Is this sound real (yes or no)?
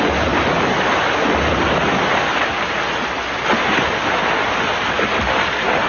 yes